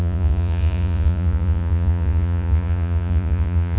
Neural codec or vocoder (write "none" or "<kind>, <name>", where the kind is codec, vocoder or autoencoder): vocoder, Vocos